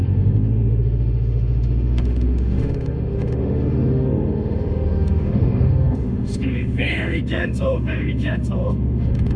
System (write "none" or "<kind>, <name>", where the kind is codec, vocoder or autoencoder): autoencoder, DAC-VAE